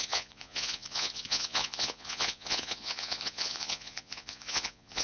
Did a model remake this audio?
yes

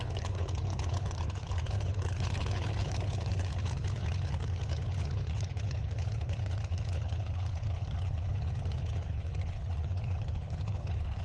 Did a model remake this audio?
yes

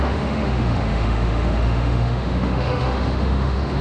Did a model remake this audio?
yes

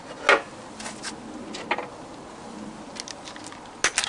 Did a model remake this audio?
no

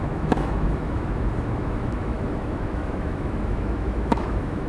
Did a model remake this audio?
yes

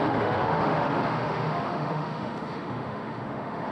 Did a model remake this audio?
yes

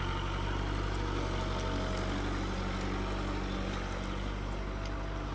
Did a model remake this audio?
no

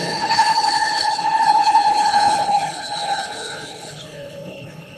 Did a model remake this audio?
yes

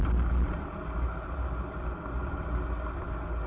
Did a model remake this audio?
no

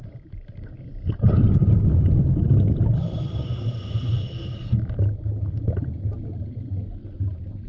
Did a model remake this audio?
no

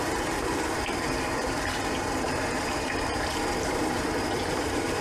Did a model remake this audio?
yes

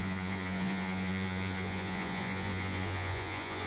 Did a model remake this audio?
yes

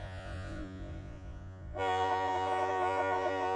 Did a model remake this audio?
yes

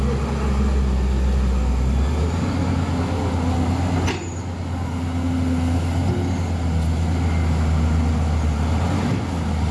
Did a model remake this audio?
no